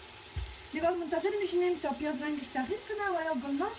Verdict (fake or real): fake